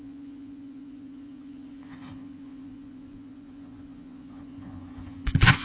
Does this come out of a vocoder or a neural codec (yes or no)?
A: yes